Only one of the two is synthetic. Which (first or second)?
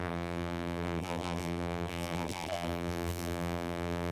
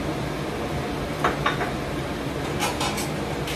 first